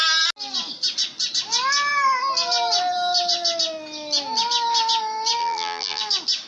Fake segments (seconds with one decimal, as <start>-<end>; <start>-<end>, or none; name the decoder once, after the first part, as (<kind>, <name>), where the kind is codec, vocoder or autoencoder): 5.4-6.0 (vocoder, BigVGAN v2)